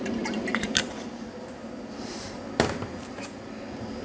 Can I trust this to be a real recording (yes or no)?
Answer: no